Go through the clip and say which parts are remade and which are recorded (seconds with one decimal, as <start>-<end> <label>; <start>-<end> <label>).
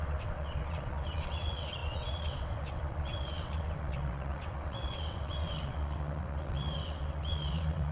0.0-7.9 remade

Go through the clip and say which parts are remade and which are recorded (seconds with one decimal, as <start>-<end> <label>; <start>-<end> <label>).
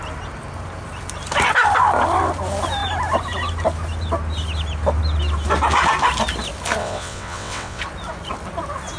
0.0-6.8 recorded; 6.8-7.8 remade; 7.8-9.0 recorded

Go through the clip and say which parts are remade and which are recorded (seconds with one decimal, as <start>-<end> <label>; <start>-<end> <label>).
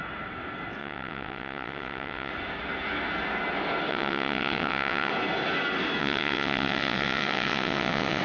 0.0-0.8 recorded; 0.8-2.3 remade; 2.3-3.9 recorded; 3.9-5.1 remade; 5.1-6.0 recorded; 6.0-8.2 remade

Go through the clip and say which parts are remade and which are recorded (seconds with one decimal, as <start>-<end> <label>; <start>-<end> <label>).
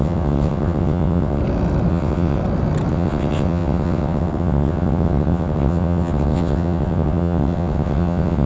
0.0-1.4 remade; 1.4-1.9 recorded; 1.9-2.4 remade; 2.4-2.9 recorded; 2.9-8.5 remade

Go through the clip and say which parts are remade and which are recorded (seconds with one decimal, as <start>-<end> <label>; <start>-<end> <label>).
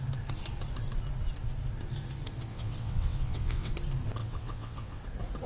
0.0-2.5 recorded; 2.5-3.7 remade; 3.7-4.2 recorded; 4.2-5.0 remade; 5.0-5.5 recorded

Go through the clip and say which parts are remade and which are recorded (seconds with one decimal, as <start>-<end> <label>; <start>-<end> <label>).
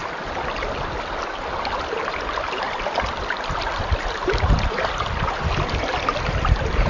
0.0-6.9 recorded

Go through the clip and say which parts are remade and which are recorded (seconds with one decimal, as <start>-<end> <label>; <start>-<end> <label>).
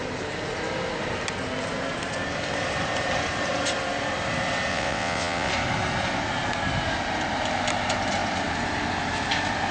0.0-4.7 recorded; 4.7-5.5 remade; 5.5-9.7 recorded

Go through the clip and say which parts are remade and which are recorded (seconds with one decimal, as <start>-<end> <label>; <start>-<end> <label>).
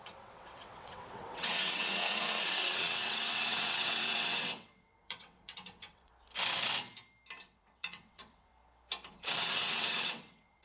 0.0-6.1 remade; 6.1-7.4 recorded; 7.4-8.5 remade; 8.5-9.1 recorded; 9.1-10.6 remade